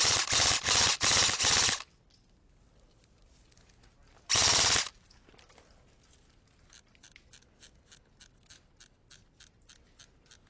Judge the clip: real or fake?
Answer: real